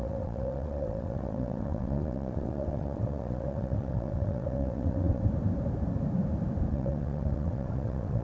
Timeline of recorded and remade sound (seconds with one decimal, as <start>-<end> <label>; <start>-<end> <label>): 0.0-5.2 remade; 5.2-6.7 recorded; 6.7-8.2 remade